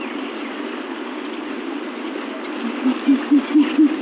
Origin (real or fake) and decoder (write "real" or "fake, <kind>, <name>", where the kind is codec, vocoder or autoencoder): real